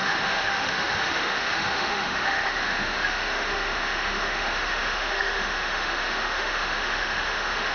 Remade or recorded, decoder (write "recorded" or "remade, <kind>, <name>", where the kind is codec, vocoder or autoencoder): remade, autoencoder, DAC-VAE